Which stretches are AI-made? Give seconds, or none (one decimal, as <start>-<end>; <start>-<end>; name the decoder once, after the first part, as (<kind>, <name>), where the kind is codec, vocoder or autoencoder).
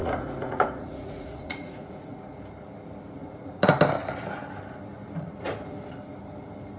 0.0-2.4 (vocoder, Vocos); 3.2-3.8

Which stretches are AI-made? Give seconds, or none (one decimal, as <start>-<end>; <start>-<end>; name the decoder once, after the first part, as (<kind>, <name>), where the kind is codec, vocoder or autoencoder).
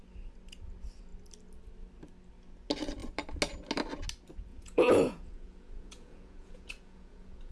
4.5-7.5 (vocoder, Vocos)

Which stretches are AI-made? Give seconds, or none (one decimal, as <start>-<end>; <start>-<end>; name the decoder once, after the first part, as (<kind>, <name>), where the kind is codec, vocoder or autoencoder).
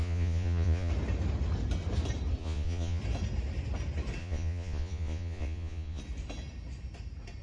0.0-0.9 (vocoder, Vocos); 2.4-3.0; 4.2-6.0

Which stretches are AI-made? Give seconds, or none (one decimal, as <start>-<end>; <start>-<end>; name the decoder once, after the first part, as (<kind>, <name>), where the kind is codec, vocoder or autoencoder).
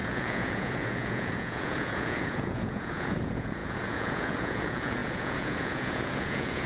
0.0-6.7 (vocoder, Vocos)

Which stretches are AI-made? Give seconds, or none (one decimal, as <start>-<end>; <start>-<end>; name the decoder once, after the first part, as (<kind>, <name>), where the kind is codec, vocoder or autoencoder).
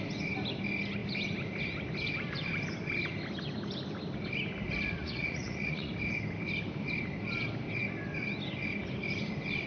5.0-5.9 (vocoder, Vocos)